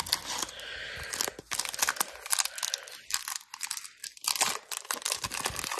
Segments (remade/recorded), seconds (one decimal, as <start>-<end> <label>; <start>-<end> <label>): 0.0-5.8 recorded